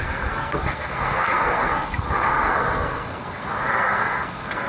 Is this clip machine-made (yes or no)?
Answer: yes